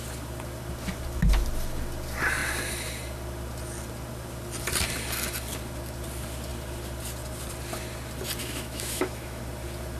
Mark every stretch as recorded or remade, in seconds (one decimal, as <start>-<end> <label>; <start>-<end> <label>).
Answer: 0.0-8.4 recorded; 8.4-9.4 remade; 9.4-10.0 recorded